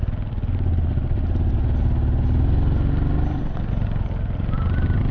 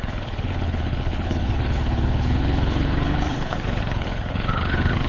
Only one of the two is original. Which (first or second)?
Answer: first